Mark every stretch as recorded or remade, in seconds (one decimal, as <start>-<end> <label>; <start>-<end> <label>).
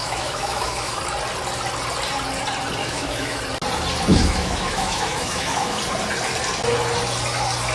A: 0.0-1.0 remade; 1.0-2.8 recorded; 2.8-3.4 remade; 3.4-4.1 recorded; 4.1-5.8 remade; 5.8-7.7 recorded